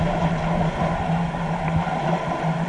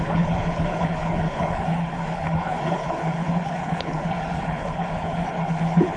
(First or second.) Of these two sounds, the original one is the first